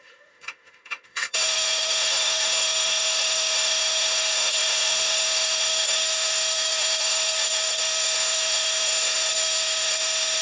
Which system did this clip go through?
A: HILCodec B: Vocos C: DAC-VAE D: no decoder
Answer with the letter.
C